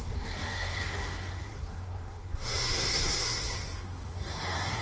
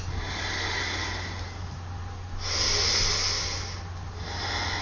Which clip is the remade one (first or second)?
first